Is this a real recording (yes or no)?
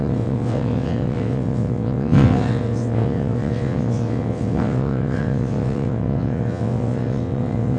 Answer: no